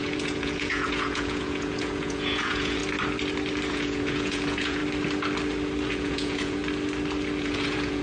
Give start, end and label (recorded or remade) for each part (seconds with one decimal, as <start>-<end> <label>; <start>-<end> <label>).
0.0-2.8 remade; 2.8-3.7 recorded; 3.7-4.8 remade; 4.8-5.9 recorded; 5.9-6.6 remade; 6.6-7.4 recorded; 7.4-8.0 remade